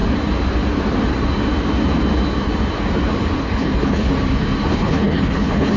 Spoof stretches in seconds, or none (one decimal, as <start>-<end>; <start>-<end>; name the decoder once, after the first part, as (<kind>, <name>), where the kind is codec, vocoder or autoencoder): 3.4-4.1 (codec, HILCodec); 4.7-5.8